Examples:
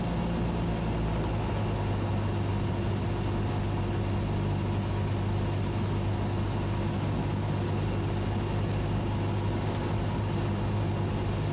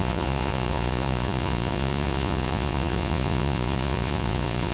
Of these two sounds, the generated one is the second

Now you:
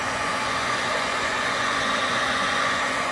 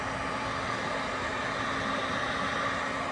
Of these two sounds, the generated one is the first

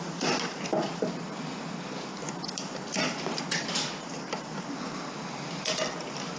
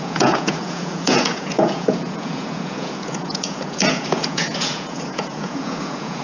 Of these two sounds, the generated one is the second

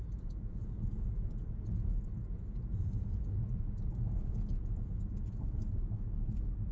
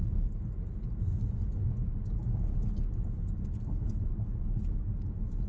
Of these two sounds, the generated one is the first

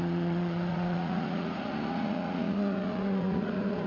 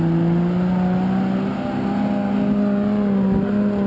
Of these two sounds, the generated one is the first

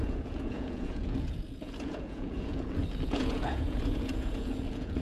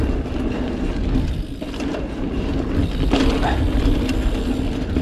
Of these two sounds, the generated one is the first